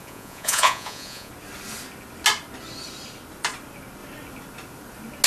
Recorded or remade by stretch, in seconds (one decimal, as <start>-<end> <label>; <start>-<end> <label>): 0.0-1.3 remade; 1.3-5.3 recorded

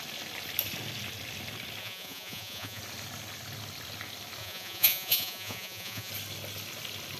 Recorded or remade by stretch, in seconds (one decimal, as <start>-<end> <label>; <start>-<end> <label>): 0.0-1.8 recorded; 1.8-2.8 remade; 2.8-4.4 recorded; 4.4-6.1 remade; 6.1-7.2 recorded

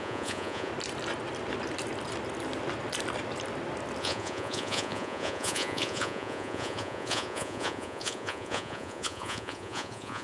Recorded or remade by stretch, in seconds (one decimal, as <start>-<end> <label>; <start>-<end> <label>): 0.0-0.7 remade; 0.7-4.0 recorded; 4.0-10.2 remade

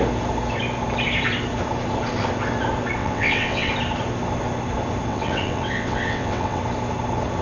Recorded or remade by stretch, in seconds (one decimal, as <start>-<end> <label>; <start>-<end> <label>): 0.0-3.0 recorded; 3.0-3.7 remade; 3.7-5.1 recorded; 5.1-6.6 remade; 6.6-7.4 recorded

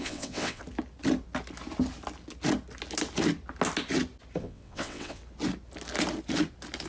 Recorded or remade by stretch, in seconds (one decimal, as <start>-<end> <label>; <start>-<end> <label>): 0.0-0.6 remade; 0.6-4.4 recorded; 4.4-5.2 remade; 5.2-6.9 recorded